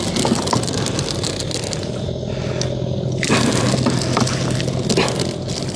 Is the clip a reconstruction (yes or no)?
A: no